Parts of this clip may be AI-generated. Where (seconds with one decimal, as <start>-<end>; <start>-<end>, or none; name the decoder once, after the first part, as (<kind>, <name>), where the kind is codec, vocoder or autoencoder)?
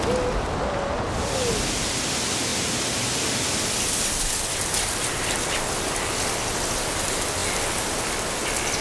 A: none